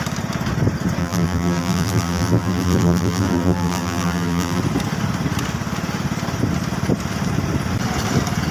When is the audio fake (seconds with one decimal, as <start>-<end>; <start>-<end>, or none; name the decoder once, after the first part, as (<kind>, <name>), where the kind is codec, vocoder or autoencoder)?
1.0-4.6 (vocoder, BigVGAN v2)